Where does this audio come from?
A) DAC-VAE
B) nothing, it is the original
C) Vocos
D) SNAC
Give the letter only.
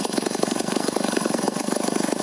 D